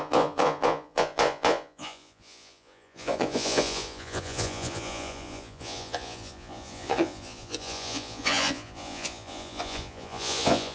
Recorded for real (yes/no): no